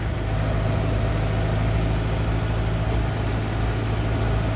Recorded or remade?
recorded